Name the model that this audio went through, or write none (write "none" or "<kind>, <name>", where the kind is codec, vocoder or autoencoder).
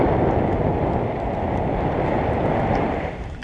none